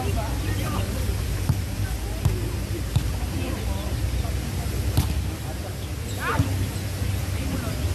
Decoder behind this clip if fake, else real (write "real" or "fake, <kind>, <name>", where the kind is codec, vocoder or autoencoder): real